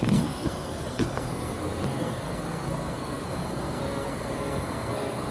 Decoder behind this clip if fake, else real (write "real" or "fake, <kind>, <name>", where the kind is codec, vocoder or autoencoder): fake, codec, SNAC